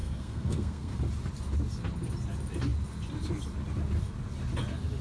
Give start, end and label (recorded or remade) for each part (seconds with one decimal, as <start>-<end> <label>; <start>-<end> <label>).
0.0-1.0 remade; 1.0-5.0 recorded